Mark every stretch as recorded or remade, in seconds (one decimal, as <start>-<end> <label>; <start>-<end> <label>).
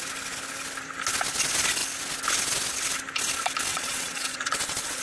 0.0-3.7 recorded; 3.7-5.0 remade